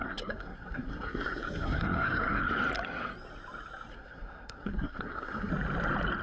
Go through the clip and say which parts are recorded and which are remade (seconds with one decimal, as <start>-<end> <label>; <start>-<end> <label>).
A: 0.0-2.4 remade; 2.4-3.9 recorded; 3.9-5.5 remade; 5.5-6.2 recorded